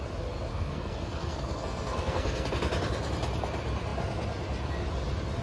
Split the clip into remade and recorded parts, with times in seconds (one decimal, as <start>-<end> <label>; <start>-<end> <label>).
0.0-0.5 recorded; 0.5-2.5 remade; 2.5-5.4 recorded